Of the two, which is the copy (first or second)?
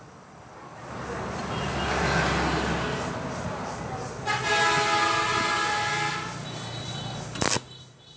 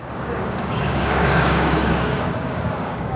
second